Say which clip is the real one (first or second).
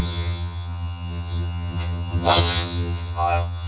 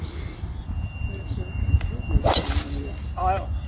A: second